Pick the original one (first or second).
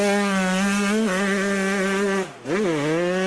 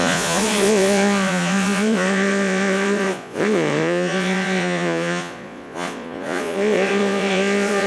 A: first